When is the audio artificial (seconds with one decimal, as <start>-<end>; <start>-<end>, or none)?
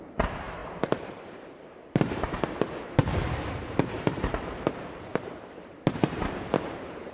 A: 0.0-7.1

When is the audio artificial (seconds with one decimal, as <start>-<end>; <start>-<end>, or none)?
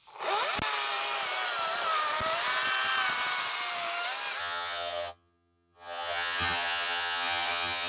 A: 4.4-7.9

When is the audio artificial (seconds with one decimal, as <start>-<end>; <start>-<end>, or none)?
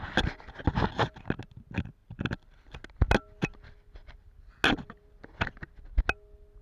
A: none